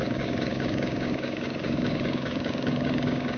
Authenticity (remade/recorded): remade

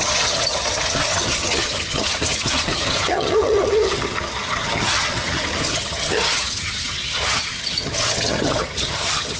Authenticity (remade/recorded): remade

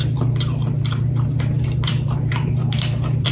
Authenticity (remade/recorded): remade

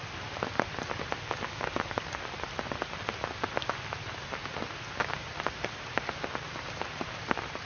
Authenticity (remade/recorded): recorded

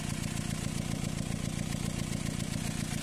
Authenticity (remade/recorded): recorded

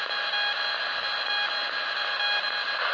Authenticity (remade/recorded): recorded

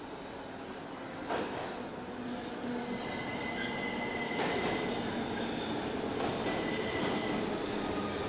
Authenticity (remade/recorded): recorded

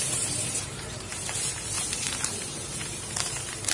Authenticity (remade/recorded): remade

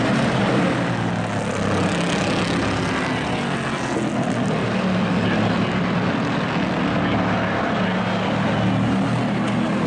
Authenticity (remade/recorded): recorded